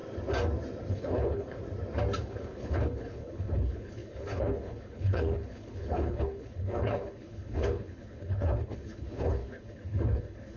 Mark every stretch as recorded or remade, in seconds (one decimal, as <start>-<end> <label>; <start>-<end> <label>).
0.0-0.9 recorded; 0.9-1.6 remade; 1.6-2.2 recorded; 2.2-10.6 remade

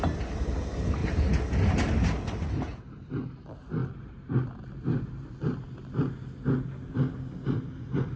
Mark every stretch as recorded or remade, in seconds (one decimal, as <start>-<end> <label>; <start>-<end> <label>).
0.0-8.2 recorded

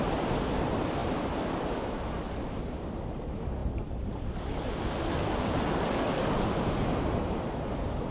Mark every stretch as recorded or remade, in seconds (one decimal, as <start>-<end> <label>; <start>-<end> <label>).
0.0-8.1 recorded

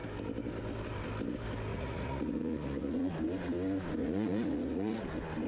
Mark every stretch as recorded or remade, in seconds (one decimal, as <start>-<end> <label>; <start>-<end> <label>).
0.0-1.7 recorded; 1.7-3.1 remade; 3.1-4.0 recorded; 4.0-5.0 remade; 5.0-5.5 recorded

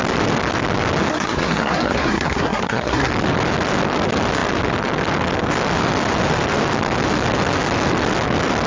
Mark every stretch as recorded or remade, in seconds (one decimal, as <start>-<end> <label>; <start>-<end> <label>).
0.0-1.1 recorded; 1.1-3.1 remade; 3.1-8.7 recorded

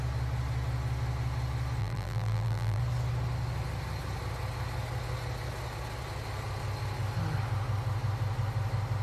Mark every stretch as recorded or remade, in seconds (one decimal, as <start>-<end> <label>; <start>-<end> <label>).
0.0-1.8 recorded; 1.8-2.8 remade; 2.8-9.0 recorded

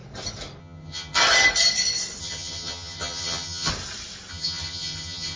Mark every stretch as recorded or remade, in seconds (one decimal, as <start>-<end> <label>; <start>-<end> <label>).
0.0-0.6 recorded; 0.6-1.2 remade; 1.2-2.2 recorded; 2.2-3.7 remade; 3.7-4.3 recorded; 4.3-5.4 remade